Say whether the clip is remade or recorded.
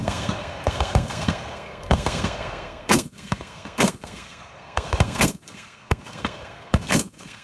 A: remade